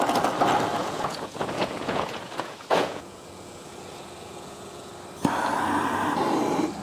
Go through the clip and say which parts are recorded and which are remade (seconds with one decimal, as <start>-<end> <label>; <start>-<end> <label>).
0.0-0.8 recorded; 0.8-4.9 remade; 4.9-6.8 recorded